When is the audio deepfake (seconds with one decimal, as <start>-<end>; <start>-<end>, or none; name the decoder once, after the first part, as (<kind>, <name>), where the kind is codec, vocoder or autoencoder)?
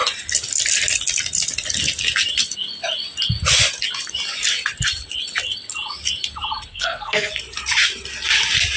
6.7-7.3 (codec, SNAC)